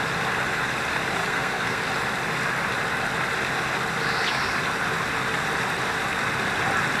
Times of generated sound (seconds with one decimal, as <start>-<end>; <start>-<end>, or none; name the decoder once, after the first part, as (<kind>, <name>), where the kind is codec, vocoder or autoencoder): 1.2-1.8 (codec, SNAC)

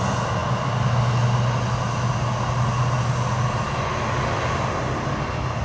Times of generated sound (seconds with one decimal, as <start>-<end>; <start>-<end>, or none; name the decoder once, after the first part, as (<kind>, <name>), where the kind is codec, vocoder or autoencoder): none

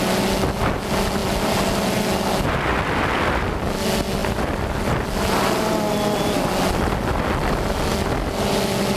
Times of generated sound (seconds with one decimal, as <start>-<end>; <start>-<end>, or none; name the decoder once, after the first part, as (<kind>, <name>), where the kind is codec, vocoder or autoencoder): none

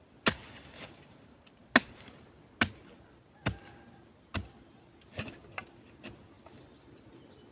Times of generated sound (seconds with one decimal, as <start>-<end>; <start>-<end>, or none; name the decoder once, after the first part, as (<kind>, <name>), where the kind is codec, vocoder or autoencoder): none

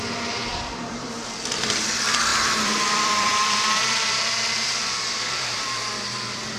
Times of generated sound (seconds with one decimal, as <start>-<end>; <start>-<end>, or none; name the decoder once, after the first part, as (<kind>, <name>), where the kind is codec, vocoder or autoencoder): 0.0-6.6 (vocoder, BigVGAN v2)

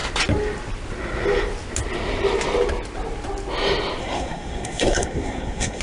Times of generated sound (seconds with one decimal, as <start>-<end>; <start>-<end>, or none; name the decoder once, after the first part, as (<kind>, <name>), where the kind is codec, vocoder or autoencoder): 4.0-5.8 (codec, SNAC)